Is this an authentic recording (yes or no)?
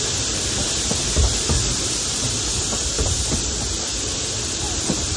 no